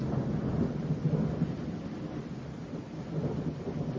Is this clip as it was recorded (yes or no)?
yes